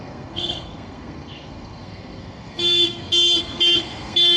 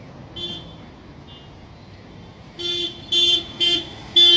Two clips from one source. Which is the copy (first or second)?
first